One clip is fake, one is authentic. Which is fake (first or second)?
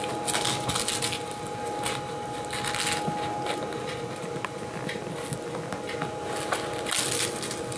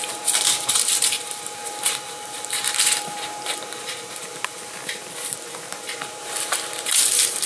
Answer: second